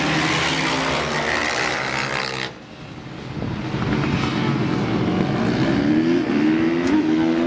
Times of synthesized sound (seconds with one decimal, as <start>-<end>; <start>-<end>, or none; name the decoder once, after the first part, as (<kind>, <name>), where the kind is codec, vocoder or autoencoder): none